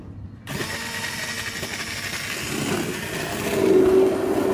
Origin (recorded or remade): recorded